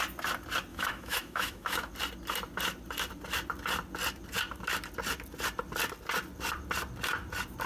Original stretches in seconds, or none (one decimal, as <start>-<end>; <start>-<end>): 0.0-0.7; 1.9-7.7